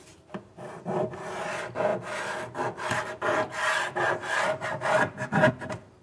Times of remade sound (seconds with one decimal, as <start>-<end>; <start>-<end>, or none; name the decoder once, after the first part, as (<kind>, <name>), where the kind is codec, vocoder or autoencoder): none